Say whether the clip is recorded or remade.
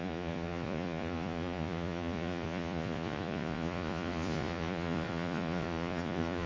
remade